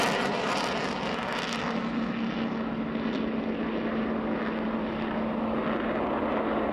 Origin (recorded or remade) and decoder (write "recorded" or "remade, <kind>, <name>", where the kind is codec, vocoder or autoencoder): recorded